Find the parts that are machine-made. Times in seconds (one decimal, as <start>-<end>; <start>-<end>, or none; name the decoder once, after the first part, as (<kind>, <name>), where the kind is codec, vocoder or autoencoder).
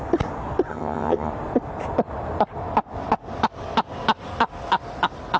0.7-1.3 (vocoder, HiFi-GAN)